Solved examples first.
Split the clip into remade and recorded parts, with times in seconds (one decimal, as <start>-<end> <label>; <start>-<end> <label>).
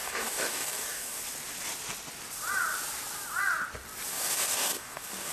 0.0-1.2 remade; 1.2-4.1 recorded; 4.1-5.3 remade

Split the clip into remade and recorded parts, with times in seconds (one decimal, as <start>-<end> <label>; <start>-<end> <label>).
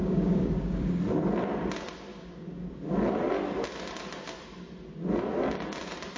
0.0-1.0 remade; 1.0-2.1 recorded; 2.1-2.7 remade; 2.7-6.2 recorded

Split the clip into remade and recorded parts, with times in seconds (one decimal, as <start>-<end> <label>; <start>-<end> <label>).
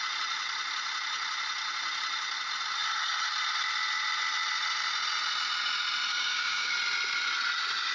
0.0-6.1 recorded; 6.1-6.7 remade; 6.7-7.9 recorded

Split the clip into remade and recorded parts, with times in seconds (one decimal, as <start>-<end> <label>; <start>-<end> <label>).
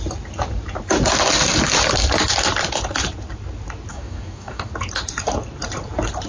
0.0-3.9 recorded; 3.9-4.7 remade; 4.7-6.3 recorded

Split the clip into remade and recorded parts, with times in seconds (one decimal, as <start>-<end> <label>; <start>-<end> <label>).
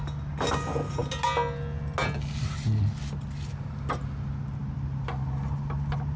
0.0-6.2 recorded